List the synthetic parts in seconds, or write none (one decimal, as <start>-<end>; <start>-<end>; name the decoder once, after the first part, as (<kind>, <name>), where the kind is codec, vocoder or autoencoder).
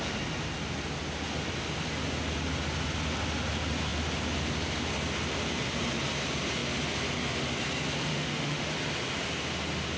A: 8.1-8.7 (autoencoder, DAC-VAE)